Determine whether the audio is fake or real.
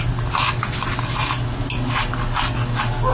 real